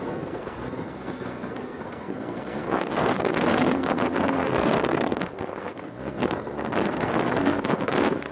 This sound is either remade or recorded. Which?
remade